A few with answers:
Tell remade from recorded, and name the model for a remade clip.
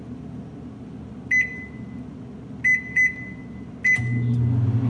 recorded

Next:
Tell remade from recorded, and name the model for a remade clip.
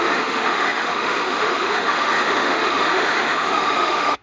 remade, autoencoder, DAC-VAE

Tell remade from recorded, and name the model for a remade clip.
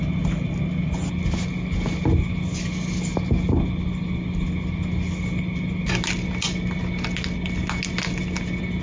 recorded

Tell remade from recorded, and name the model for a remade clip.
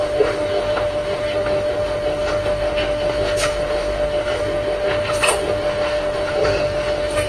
remade, autoencoder, DAC-VAE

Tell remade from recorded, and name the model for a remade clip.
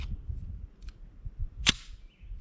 recorded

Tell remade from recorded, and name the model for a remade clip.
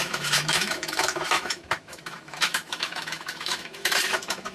remade, autoencoder, DAC-VAE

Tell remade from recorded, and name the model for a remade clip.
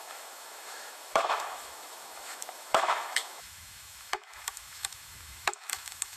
remade, autoencoder, DAC-VAE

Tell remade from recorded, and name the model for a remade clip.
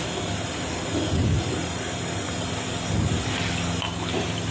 recorded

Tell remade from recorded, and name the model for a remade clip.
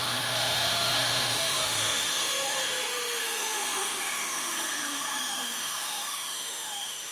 remade, autoencoder, DAC-VAE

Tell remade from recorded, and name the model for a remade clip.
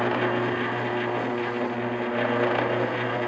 recorded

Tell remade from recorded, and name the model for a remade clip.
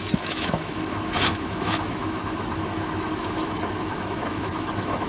remade, autoencoder, DAC-VAE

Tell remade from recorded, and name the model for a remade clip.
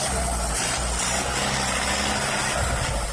recorded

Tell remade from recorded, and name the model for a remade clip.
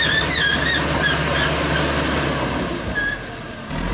recorded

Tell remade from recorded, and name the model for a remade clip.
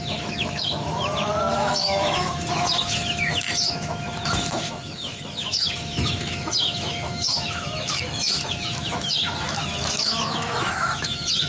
remade, autoencoder, DAC-VAE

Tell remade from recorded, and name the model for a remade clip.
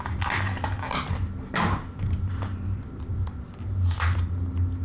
recorded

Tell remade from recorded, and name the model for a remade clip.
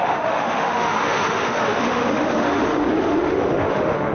remade, autoencoder, DAC-VAE